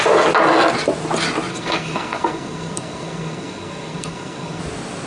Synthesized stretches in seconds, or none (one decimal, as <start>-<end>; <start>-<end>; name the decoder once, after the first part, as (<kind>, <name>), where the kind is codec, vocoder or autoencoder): 1.5-4.6 (codec, SNAC)